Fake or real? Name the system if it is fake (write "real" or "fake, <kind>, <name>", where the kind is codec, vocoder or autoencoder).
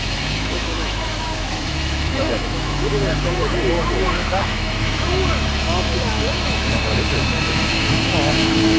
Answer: fake, autoencoder, DAC-VAE